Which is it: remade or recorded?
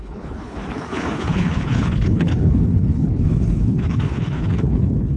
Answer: remade